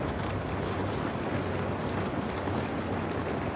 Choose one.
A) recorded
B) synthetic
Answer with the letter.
A